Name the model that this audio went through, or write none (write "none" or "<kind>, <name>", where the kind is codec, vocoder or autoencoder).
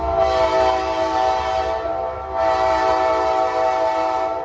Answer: none